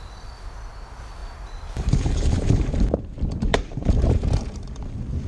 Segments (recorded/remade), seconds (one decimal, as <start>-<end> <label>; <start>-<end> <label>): 0.0-1.2 recorded; 1.2-2.8 remade; 2.8-3.5 recorded; 3.5-4.8 remade; 4.8-5.3 recorded